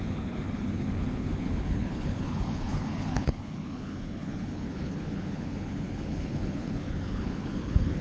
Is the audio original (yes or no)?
no